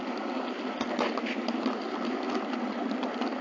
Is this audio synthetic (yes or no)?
no